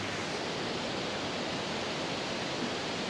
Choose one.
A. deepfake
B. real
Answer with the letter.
B